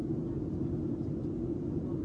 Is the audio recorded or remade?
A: recorded